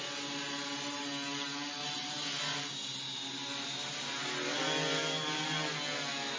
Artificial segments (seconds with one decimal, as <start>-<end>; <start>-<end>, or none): 1.8-2.6; 3.5-4.0